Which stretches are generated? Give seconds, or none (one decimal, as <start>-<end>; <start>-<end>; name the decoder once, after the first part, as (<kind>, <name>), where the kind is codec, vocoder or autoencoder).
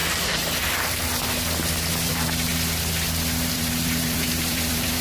1.9-2.5 (vocoder, BigVGAN v2); 3.5-5.0